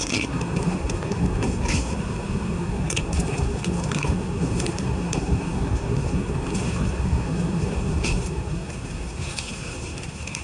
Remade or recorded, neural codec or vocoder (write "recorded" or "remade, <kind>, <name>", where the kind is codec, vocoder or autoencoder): remade, codec, SNAC